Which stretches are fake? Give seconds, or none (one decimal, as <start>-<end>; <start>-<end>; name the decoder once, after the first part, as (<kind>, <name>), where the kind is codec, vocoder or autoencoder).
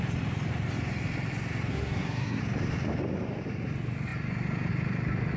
1.7-2.4 (codec, SNAC)